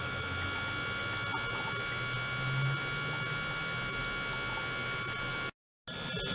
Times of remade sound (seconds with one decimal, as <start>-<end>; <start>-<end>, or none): none